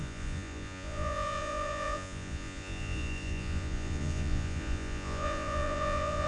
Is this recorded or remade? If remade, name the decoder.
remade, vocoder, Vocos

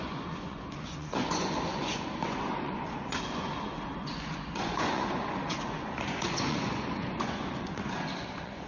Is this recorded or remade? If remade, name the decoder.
remade, vocoder, Vocos